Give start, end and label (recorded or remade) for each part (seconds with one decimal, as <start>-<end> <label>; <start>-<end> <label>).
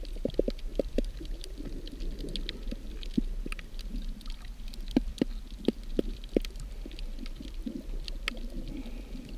0.0-0.7 recorded; 0.7-1.5 remade; 1.5-9.4 recorded